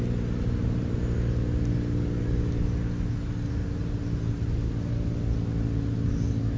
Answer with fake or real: real